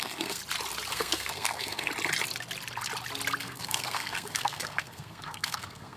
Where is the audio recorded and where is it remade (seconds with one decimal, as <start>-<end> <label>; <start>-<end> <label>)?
0.0-0.4 remade; 0.4-0.9 recorded; 0.9-1.9 remade; 1.9-3.4 recorded; 3.4-6.0 remade